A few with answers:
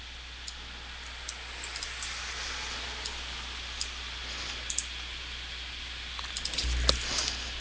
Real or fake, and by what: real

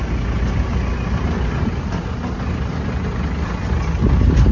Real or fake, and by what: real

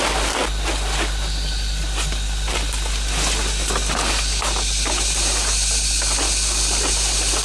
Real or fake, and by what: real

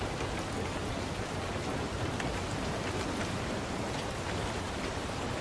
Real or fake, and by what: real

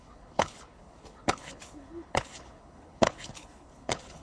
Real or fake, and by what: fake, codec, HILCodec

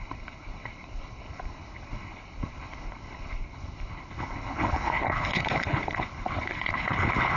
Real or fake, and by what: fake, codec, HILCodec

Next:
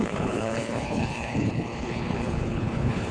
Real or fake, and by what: fake, codec, HILCodec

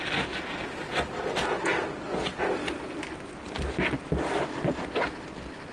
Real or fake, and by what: real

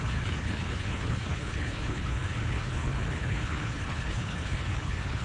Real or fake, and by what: fake, codec, HILCodec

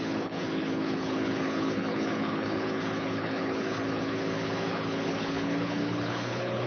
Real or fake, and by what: fake, codec, HILCodec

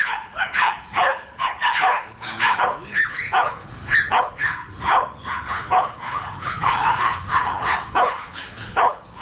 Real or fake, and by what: fake, codec, HILCodec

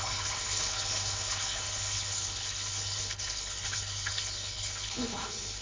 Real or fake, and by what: fake, codec, HILCodec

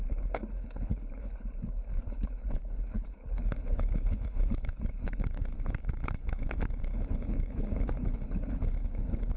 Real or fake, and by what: fake, codec, HILCodec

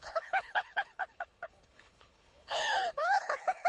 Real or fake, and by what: fake, codec, HILCodec